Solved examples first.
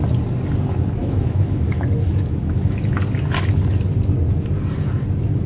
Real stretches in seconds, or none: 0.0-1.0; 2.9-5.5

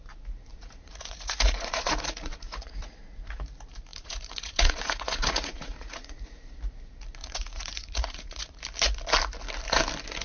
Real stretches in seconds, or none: 0.0-0.5; 3.4-3.9; 6.4-7.2; 8.6-10.2